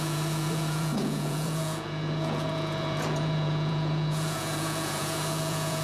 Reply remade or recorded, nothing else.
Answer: remade